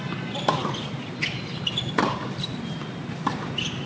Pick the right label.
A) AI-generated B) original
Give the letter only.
B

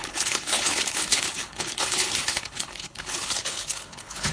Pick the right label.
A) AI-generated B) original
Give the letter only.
A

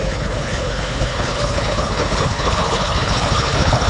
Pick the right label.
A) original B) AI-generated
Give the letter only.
B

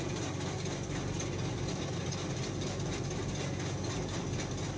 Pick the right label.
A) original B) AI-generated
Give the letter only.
A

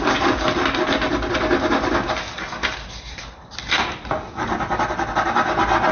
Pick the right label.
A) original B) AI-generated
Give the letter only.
A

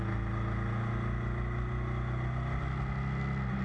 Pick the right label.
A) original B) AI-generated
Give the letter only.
A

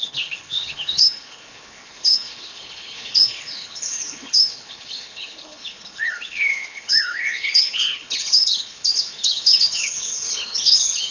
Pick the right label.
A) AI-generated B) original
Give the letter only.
A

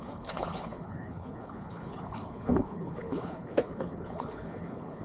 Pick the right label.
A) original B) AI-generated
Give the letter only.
B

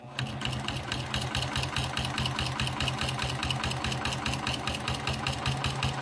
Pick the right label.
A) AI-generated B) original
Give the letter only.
B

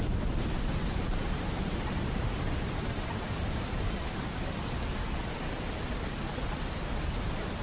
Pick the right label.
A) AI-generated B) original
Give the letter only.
B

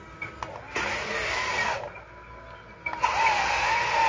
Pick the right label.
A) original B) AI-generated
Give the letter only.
A